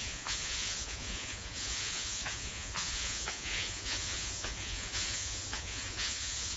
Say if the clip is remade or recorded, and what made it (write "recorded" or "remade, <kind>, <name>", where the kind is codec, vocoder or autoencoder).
remade, vocoder, Vocos